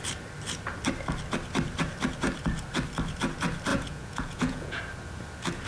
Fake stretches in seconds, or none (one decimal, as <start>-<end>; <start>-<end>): 3.7-4.8

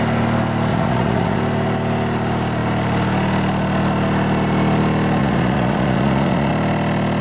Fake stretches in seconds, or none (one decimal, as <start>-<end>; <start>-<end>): 0.7-1.4; 5.2-6.5

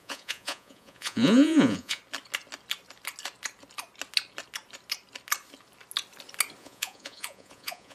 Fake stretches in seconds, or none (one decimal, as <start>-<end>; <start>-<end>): 0.0-2.0; 6.6-7.9

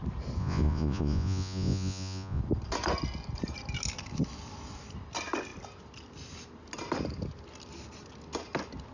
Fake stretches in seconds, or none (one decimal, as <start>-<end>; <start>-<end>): 0.4-2.4

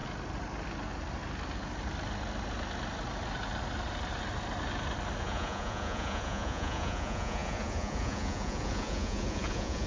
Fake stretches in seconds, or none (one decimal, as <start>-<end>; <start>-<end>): 5.2-9.9

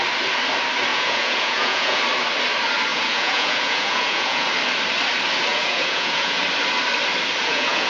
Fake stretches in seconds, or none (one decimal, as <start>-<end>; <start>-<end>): 0.9-2.0; 2.9-4.5; 5.5-6.4; 7.4-7.9